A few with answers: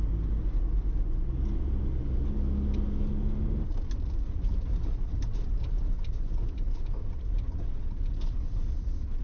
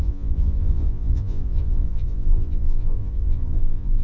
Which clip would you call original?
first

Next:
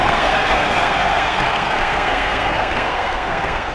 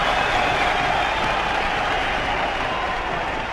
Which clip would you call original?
second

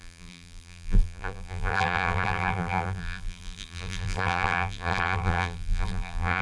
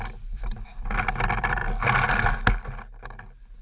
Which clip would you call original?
second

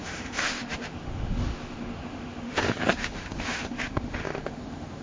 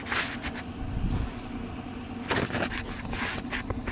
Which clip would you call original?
second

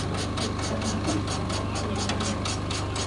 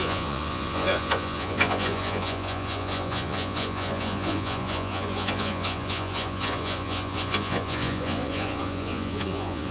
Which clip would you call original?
first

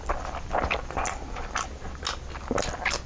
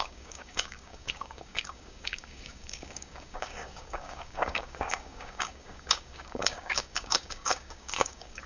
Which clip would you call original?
first